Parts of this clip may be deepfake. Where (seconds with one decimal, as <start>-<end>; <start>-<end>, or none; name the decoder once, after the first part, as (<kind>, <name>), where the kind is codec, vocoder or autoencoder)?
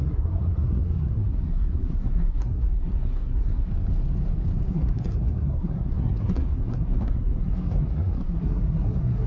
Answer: 0.0-3.7 (codec, SNAC); 4.7-9.3